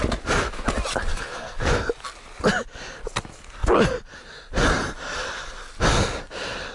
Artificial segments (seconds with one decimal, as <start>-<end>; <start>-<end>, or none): 1.1-1.7